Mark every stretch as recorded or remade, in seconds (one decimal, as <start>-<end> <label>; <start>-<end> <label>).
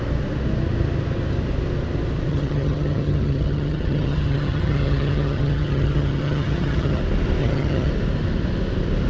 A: 0.0-2.3 recorded; 2.3-7.0 remade; 7.0-7.4 recorded; 7.4-7.9 remade; 7.9-9.1 recorded